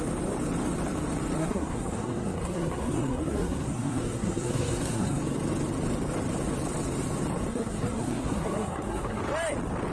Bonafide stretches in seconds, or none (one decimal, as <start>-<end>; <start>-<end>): 0.0-1.4; 5.2-7.5; 9.2-9.9